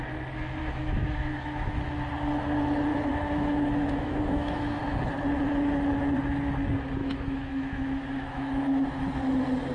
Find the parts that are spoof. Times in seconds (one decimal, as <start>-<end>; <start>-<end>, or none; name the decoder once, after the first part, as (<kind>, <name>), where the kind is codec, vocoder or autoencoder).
0.6-1.9 (autoencoder, DAC-VAE); 2.9-4.8; 7.0-9.0